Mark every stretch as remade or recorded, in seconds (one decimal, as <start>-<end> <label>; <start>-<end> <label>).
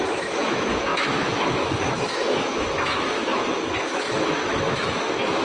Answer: 0.0-5.4 remade